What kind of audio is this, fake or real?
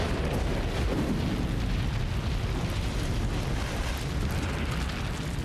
real